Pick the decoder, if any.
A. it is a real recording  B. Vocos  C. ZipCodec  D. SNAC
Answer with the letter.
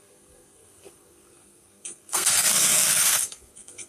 D